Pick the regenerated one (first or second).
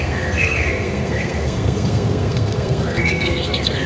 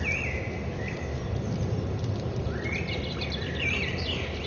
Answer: first